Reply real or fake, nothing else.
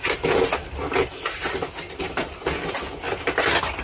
real